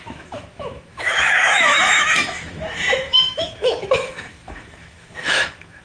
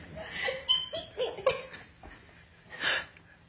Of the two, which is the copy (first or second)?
first